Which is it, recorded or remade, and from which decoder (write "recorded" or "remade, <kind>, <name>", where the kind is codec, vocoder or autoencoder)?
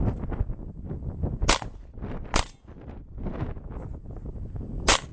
recorded